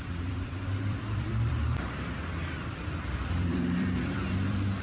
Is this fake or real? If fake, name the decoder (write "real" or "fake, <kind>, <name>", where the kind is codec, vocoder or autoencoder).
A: fake, vocoder, BigVGAN v2